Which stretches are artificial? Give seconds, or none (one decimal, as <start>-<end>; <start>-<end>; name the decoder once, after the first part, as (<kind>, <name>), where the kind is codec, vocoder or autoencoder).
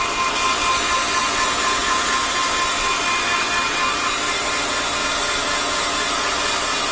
1.2-2.4 (vocoder, Vocos); 5.0-6.3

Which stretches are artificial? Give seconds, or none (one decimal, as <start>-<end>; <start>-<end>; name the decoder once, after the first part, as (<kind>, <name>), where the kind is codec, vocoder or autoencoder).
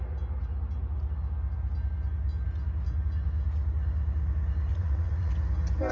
4.7-5.3 (vocoder, Vocos)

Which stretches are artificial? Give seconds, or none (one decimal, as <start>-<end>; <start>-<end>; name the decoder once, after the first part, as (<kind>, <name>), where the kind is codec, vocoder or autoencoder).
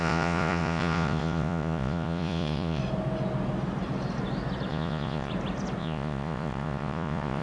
0.0-2.8 (vocoder, Vocos); 4.7-5.3; 5.8-7.4